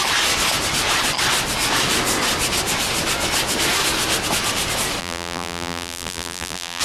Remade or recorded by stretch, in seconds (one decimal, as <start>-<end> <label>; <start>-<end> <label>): 0.0-5.0 recorded; 5.0-6.8 remade